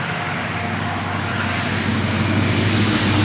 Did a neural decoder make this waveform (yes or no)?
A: no